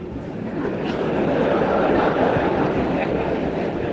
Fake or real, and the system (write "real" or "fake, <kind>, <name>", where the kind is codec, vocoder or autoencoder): real